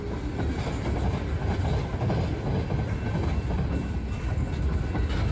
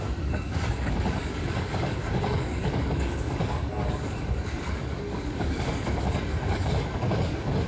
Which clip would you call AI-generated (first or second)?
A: second